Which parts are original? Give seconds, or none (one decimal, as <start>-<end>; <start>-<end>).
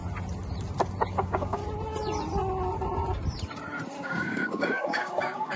0.0-1.1; 1.6-4.0